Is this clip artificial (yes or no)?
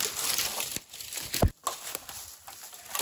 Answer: no